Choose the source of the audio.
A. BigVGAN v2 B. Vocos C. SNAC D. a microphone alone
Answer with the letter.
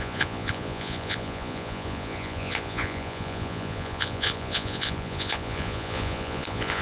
B